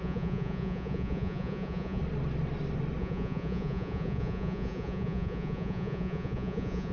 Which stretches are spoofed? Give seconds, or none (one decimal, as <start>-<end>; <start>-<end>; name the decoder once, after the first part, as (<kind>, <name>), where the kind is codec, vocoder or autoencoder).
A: 0.0-2.0 (vocoder, Vocos); 3.0-6.9